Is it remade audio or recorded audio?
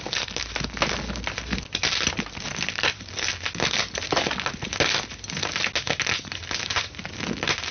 recorded